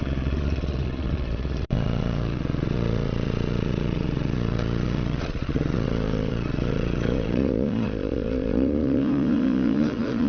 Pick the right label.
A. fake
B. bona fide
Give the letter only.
A